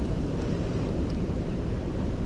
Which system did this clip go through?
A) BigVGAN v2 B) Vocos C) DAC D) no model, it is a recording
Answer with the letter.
A